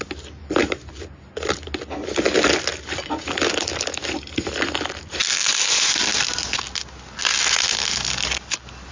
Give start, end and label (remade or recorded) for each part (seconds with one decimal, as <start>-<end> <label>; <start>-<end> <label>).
0.0-8.9 recorded